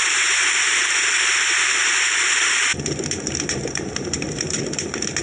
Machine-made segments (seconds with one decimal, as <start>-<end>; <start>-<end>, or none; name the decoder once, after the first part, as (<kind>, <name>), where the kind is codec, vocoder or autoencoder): 1.8-2.3 (vocoder, BigVGAN v2); 2.7-5.2